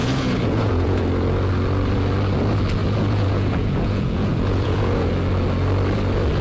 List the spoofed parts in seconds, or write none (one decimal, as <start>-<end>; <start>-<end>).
0.0-1.0; 2.8-5.1